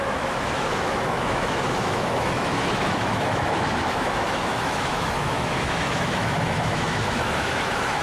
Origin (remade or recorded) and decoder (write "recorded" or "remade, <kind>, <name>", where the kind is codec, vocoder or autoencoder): remade, autoencoder, DAC-VAE